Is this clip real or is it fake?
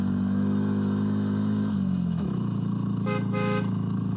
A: fake